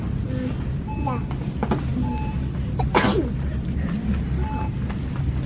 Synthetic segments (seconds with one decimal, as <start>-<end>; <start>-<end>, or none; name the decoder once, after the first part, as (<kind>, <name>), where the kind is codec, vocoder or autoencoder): none